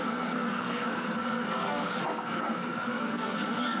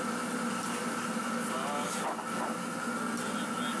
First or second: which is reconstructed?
first